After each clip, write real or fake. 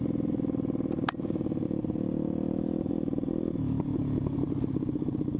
real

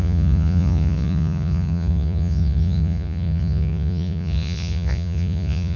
fake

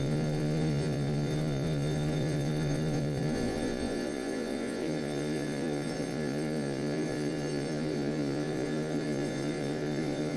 fake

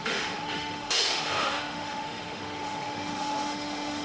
fake